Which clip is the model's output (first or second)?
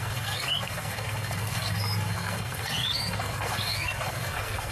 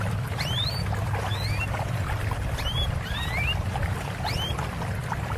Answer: first